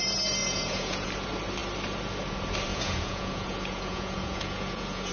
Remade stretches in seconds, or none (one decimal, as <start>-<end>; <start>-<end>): 0.4-1.1; 2.7-5.1